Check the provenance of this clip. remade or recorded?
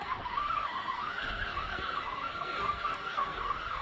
remade